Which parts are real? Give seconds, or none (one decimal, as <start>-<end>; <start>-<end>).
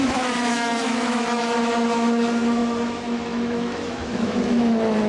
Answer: none